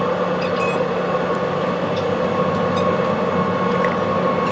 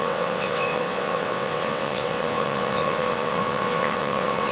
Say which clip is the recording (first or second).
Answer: first